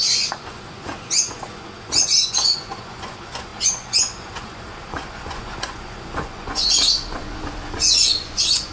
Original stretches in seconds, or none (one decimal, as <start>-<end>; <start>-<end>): none